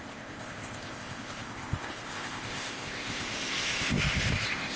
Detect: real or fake fake